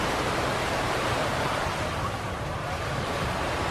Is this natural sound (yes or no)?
no